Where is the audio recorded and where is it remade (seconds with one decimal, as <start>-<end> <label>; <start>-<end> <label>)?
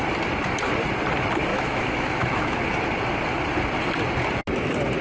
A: 0.0-1.5 recorded; 1.5-2.6 remade; 2.6-5.0 recorded